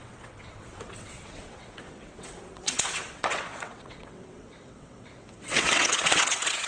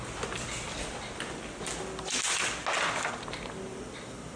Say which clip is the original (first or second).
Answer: second